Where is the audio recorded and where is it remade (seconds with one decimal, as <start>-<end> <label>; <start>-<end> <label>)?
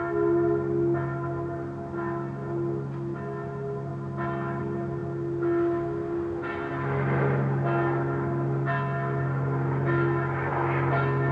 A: 0.0-11.3 recorded